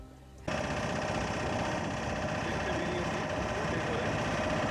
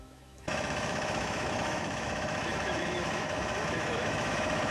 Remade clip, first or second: second